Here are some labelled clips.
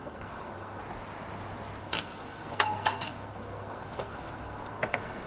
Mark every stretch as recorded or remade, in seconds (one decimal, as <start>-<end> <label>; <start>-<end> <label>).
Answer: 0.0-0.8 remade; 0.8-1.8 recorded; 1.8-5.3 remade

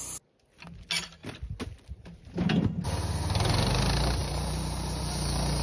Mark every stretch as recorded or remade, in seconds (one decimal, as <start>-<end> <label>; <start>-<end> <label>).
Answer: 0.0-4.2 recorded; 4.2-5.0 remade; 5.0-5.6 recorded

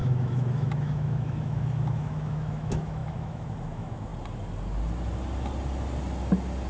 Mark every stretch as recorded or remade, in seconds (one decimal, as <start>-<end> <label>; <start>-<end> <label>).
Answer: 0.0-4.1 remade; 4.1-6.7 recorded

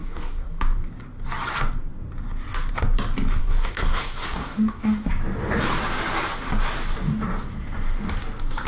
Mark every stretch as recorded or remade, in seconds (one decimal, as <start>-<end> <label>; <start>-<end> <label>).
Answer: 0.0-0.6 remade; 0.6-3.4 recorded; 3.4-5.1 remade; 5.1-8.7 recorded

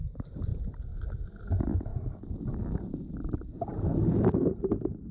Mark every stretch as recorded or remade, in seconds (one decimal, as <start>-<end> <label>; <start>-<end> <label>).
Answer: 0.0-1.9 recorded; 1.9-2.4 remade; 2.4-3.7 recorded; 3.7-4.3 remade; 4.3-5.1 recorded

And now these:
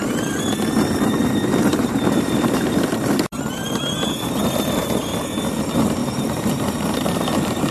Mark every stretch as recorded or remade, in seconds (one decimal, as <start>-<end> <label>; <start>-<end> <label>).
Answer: 0.0-1.7 recorded; 1.7-2.9 remade; 2.9-6.0 recorded; 6.0-7.7 remade